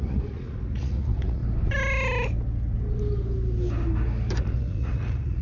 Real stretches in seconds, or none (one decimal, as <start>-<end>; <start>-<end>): 1.4-4.4